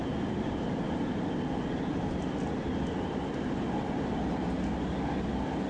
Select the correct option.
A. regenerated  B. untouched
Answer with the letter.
B